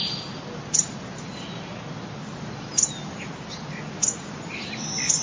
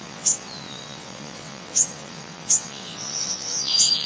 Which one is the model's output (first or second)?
second